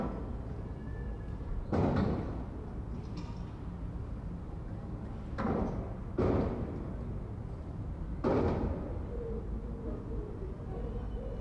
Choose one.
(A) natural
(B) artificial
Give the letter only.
A